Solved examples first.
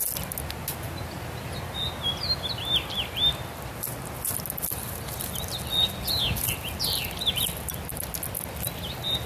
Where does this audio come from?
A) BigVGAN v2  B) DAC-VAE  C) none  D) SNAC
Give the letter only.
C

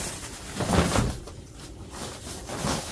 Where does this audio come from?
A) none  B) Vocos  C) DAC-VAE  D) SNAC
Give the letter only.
A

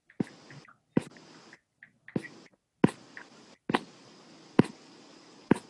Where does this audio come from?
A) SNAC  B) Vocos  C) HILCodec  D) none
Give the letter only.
D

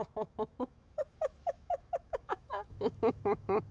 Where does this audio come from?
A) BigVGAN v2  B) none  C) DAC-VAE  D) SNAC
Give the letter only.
C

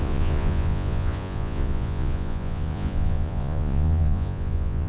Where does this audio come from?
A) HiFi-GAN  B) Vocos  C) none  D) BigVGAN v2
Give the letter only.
B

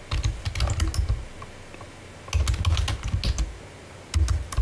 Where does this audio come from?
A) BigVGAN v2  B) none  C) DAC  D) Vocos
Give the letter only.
B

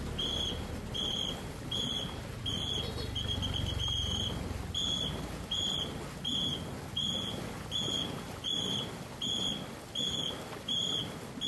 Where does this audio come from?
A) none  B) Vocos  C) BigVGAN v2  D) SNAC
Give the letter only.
A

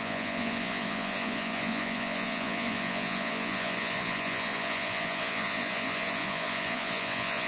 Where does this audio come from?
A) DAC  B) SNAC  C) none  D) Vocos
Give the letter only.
D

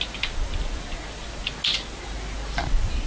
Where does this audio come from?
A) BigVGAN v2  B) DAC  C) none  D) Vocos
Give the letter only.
C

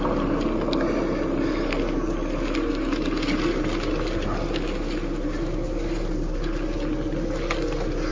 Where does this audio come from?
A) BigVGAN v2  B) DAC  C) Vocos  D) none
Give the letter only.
D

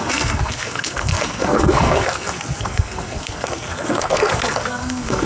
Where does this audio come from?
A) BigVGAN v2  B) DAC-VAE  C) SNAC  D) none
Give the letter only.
C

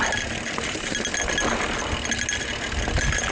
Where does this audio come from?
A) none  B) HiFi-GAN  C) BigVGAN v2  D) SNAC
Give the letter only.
A